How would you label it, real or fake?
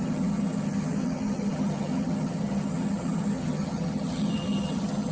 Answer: fake